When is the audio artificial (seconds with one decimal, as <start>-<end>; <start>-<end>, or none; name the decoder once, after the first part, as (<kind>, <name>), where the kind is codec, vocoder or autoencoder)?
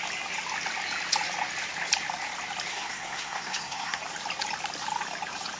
2.7-4.0 (codec, SNAC)